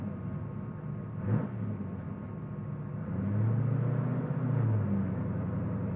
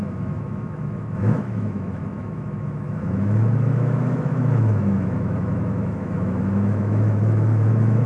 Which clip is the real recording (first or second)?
first